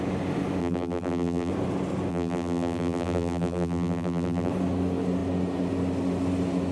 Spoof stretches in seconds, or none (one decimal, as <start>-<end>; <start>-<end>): 0.6-1.5; 2.1-4.5